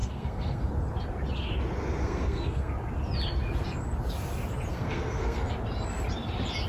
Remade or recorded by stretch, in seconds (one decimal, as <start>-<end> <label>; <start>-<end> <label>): 0.0-0.7 remade; 0.7-2.0 recorded; 2.0-2.7 remade; 2.7-4.7 recorded; 4.7-5.5 remade; 5.5-6.7 recorded